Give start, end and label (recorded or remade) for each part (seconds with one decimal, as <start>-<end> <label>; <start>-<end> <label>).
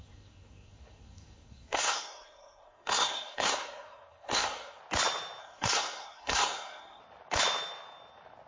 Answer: 0.0-4.8 remade; 4.8-5.4 recorded; 5.4-7.0 remade; 7.0-8.5 recorded